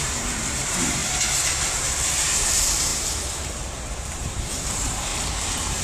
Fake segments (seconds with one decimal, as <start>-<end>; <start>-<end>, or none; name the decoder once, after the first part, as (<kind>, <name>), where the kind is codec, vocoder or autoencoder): 0.0-1.0 (vocoder, BigVGAN v2); 1.5-5.1